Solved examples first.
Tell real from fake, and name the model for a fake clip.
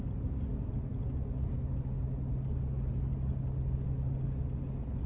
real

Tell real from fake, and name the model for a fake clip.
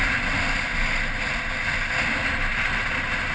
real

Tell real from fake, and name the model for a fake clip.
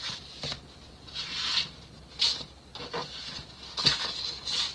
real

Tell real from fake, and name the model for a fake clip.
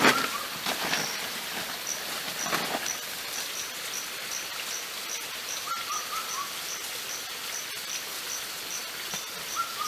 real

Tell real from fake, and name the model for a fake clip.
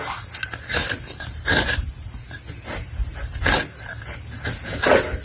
real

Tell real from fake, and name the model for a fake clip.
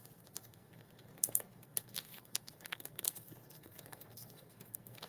fake, codec, SNAC